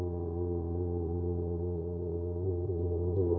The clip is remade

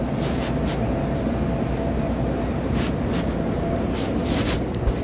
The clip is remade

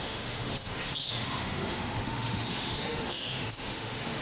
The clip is remade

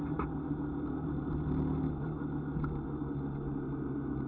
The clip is recorded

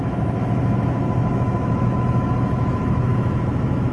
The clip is remade